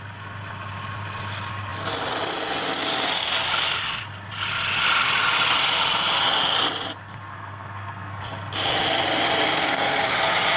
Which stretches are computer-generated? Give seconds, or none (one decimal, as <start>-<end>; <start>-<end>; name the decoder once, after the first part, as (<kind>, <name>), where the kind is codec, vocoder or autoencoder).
7.3-8.2 (codec, SNAC); 9.6-10.1